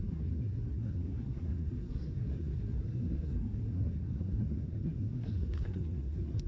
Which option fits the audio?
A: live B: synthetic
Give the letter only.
B